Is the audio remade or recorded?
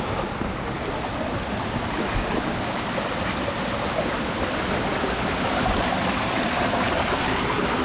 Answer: recorded